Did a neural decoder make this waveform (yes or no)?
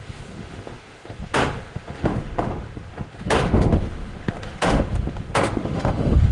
yes